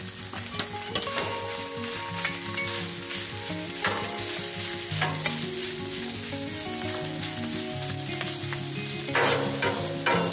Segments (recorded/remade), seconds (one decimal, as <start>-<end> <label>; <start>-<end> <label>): 0.0-10.3 recorded